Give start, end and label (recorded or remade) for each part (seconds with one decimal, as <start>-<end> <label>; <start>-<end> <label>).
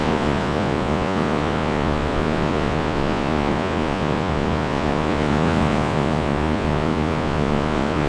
0.0-8.1 remade